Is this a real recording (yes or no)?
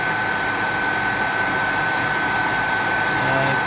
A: yes